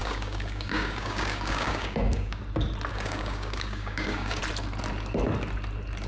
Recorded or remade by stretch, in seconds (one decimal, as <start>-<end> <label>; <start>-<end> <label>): 0.0-2.4 remade; 2.4-2.9 recorded; 2.9-4.4 remade; 4.4-6.1 recorded